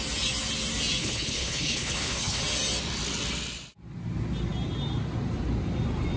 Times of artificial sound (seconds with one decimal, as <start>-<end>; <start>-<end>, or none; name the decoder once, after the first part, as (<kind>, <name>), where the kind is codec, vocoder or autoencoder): 1.0-2.4 (codec, HILCodec)